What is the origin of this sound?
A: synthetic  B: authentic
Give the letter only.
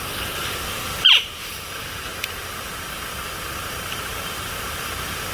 A